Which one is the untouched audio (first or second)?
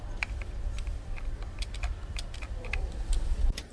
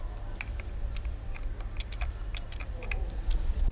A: second